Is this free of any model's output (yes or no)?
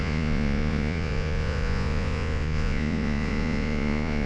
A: no